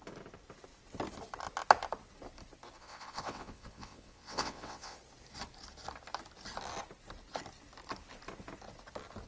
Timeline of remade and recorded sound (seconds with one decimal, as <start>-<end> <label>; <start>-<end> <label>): 0.0-2.8 recorded; 2.8-5.0 remade; 5.0-9.3 recorded